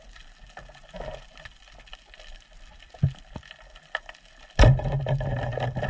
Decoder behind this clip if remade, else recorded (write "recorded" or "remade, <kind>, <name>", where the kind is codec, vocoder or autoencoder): recorded